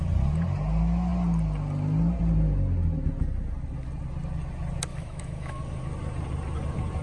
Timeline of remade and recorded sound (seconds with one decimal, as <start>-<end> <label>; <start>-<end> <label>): 0.0-4.9 recorded; 4.9-5.6 remade; 5.6-7.0 recorded